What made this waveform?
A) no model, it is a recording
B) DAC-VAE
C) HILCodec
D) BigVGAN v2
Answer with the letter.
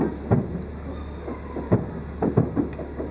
A